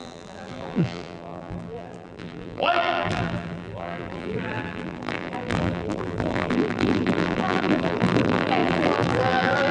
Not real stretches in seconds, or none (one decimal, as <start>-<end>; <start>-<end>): 0.0-9.7